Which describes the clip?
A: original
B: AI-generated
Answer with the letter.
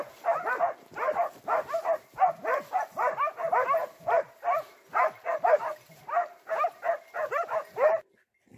A